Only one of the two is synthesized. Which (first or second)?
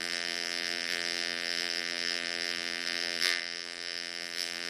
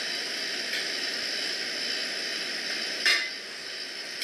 first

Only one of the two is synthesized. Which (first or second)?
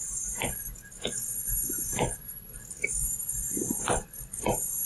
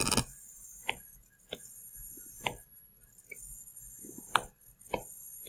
first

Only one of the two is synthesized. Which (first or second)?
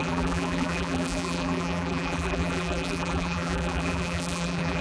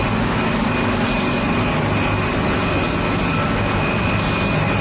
first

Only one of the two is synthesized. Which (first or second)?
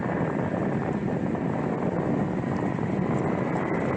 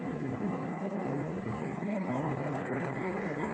second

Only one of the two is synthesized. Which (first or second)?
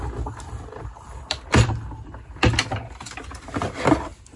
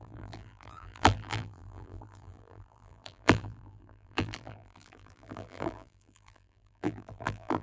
second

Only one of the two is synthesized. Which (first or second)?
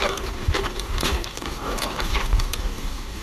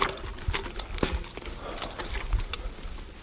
first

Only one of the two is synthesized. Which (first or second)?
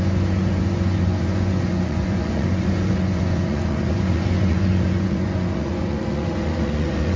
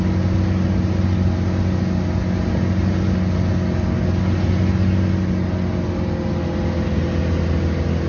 first